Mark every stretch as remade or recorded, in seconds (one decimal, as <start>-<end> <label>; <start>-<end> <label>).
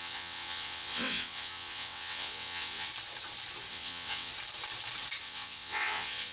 0.0-2.9 remade; 2.9-3.7 recorded; 3.7-4.3 remade; 4.3-5.2 recorded; 5.2-6.3 remade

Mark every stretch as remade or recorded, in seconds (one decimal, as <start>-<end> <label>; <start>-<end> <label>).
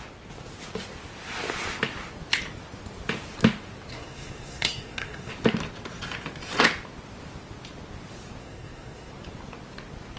0.0-3.9 recorded; 3.9-5.3 remade; 5.3-8.4 recorded; 8.4-9.1 remade; 9.1-10.2 recorded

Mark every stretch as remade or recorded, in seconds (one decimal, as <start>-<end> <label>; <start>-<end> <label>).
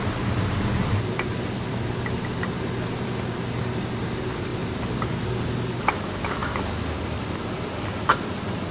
0.0-8.7 recorded